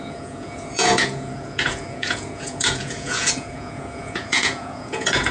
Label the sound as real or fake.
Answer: fake